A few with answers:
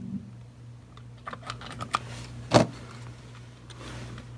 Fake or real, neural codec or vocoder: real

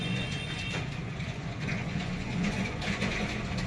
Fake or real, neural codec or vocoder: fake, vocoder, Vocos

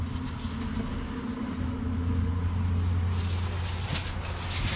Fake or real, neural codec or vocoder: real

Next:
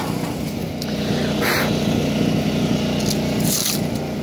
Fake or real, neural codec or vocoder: real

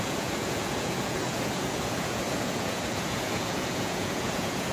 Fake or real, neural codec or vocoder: fake, vocoder, Vocos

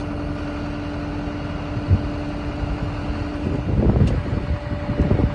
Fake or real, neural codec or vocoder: real